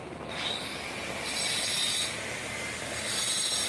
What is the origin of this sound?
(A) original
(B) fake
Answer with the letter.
A